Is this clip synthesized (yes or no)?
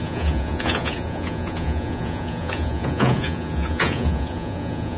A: yes